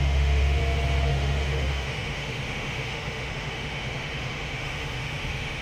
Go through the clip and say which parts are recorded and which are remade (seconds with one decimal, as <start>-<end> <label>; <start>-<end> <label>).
0.0-0.6 remade; 0.6-1.1 recorded; 1.1-5.6 remade